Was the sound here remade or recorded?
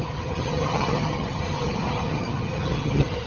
remade